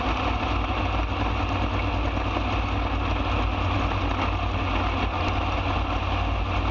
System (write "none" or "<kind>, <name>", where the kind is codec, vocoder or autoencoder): none